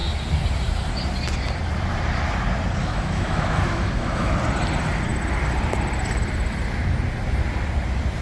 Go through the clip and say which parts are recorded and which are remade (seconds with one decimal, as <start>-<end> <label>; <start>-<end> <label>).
0.0-2.8 recorded; 2.8-4.4 remade; 4.4-8.2 recorded